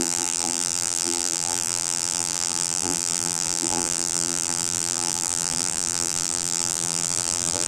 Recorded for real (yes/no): no